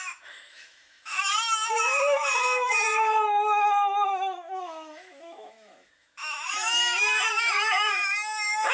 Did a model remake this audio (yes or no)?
yes